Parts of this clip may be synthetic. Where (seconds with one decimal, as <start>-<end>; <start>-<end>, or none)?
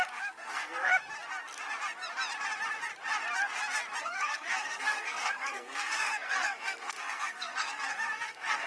0.0-0.9; 4.0-8.7